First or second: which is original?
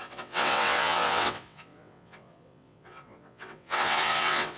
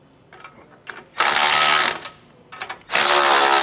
second